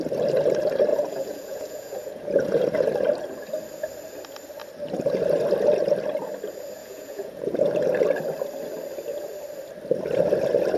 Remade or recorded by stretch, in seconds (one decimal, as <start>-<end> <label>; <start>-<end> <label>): 0.0-0.9 recorded; 0.9-2.6 remade; 2.6-6.8 recorded; 6.8-7.7 remade; 7.7-10.8 recorded